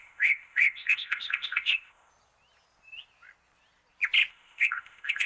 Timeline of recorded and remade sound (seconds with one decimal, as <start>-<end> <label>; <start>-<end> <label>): 0.0-2.1 remade; 2.1-4.3 recorded; 4.3-5.3 remade